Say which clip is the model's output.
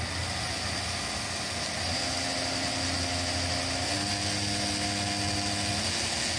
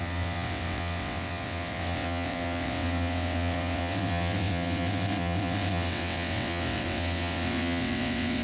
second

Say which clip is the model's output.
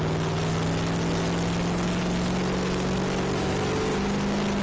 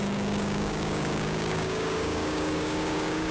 second